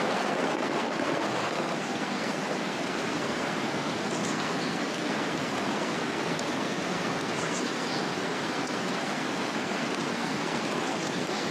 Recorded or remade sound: remade